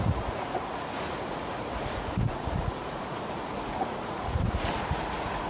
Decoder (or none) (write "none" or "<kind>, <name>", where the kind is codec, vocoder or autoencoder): vocoder, Vocos